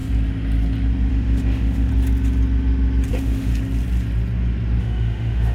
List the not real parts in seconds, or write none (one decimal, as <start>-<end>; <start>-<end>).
1.1-1.9; 3.1-3.5; 4.8-5.5